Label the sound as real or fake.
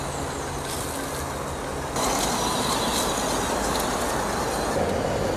real